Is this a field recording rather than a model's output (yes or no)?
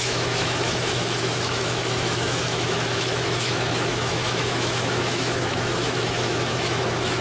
no